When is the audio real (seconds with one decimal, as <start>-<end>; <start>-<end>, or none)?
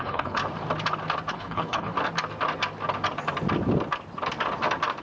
0.4-1.3; 1.9-5.0